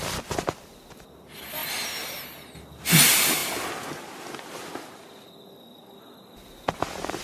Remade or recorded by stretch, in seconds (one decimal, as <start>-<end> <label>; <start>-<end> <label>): 0.0-7.2 recorded